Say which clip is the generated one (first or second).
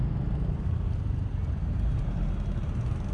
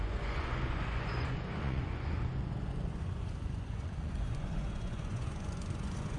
second